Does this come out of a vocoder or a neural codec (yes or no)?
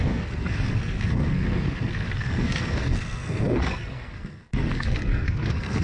yes